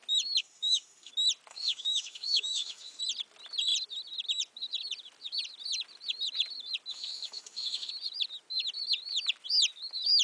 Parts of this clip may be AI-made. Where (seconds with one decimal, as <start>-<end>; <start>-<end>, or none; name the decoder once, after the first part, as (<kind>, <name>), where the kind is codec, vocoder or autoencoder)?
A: 0.4-1.1 (autoencoder, DAC-VAE); 1.5-3.0; 6.9-7.9